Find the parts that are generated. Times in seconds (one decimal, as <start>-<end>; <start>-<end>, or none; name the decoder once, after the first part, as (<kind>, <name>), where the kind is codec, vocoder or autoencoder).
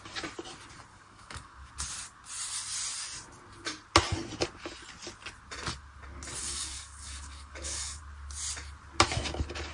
0.9-1.7 (codec, DAC); 6.4-8.0